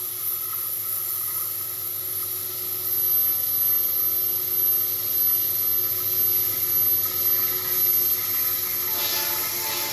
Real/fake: real